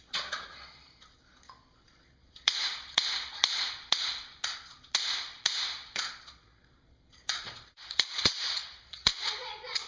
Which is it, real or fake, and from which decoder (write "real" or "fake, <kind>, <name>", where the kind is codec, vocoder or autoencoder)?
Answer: fake, vocoder, Vocos